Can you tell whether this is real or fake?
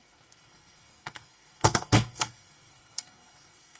fake